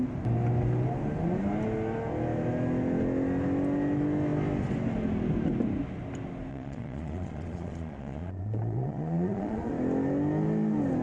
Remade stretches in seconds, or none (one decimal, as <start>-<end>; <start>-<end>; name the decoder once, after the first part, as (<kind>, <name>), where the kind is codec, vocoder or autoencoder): 6.5-9.7 (vocoder, Vocos)